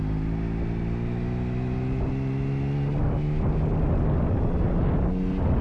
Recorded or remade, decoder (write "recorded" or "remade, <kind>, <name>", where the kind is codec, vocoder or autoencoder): recorded